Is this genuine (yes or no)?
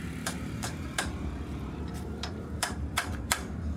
no